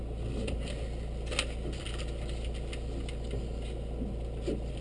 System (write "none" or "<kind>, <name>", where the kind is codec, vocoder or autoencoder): none